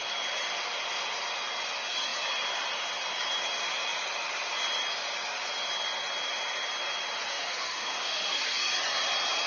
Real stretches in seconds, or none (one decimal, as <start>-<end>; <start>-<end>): 0.0-7.3; 8.7-9.5